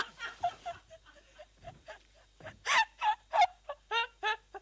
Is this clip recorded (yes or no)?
no